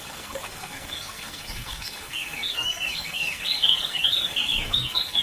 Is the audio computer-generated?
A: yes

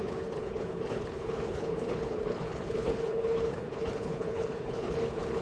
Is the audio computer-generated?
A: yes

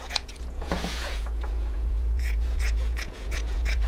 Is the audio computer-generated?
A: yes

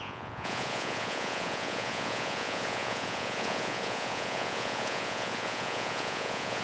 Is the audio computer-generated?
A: yes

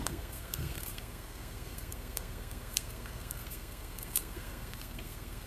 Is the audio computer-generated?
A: yes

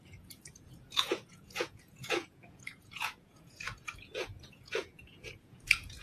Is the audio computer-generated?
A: yes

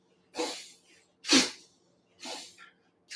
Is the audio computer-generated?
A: no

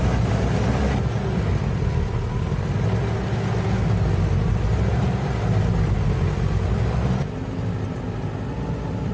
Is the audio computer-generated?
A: no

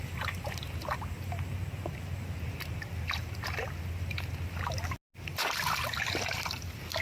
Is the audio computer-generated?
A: no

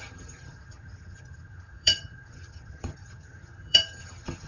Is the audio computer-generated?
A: yes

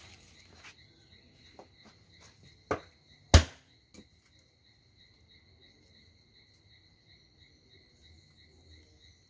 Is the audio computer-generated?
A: no